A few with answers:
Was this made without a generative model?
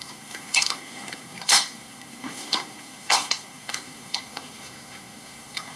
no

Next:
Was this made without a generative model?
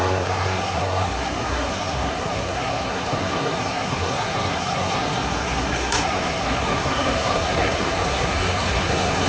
no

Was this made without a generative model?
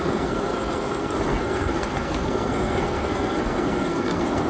no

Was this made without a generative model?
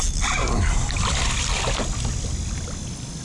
yes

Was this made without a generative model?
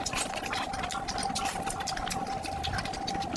yes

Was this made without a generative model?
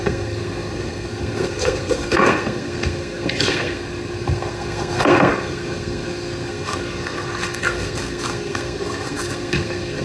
no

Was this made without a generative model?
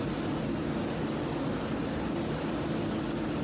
yes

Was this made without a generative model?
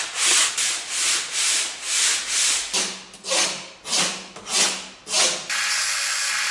yes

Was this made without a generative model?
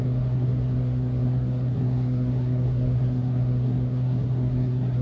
no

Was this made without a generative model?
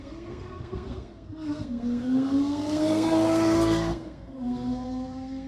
no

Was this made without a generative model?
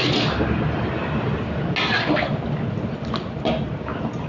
yes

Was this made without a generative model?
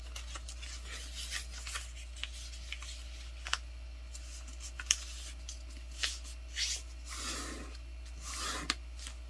yes